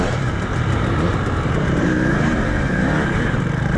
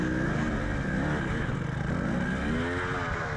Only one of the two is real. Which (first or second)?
second